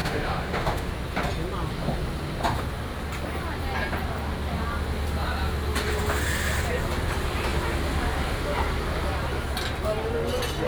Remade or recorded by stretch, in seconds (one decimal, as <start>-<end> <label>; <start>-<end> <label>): 0.0-0.9 remade; 0.9-10.7 recorded